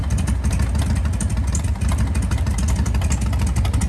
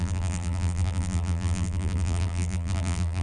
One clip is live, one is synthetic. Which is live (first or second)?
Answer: first